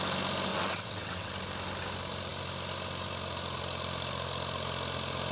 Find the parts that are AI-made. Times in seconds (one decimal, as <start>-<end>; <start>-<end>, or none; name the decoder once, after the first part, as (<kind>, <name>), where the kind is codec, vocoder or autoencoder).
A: 0.5-1.3 (vocoder, WaveNeXt)